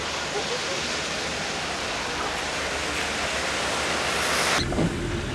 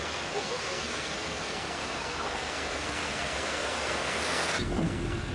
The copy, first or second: second